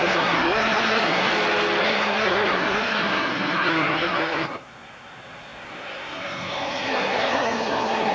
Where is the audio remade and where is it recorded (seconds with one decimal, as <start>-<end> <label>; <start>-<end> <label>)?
0.0-1.3 remade; 1.3-1.8 recorded; 1.8-8.1 remade